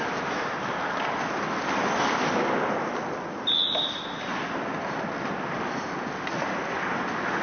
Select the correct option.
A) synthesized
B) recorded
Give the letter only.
B